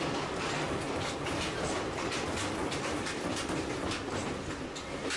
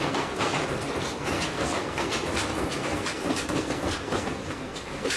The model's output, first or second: second